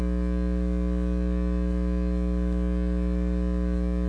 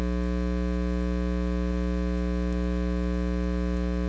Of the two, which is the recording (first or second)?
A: second